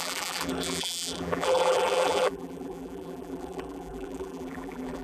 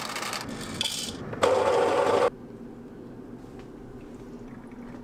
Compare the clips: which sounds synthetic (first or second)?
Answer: first